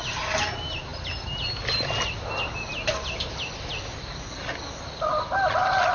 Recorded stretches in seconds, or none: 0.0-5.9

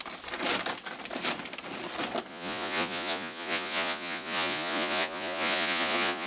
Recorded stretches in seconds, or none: 0.0-2.3

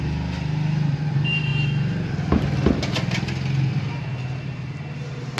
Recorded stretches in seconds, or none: 0.0-5.4